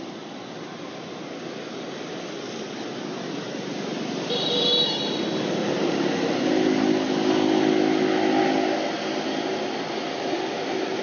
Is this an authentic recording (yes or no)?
yes